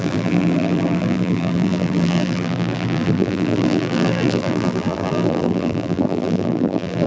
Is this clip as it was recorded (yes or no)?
no